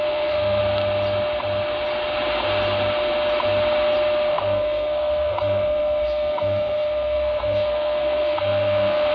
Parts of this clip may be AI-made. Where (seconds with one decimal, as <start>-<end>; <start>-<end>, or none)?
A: 0.0-0.6; 4.3-9.1